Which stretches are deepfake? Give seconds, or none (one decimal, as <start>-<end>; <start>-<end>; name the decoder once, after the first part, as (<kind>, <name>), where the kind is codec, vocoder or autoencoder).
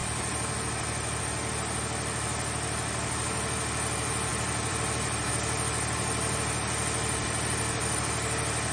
4.3-5.3 (vocoder, BigVGAN v2)